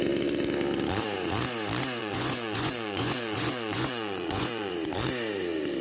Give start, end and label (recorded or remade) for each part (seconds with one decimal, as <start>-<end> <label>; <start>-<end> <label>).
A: 0.0-2.0 recorded; 2.0-4.7 remade; 4.7-5.8 recorded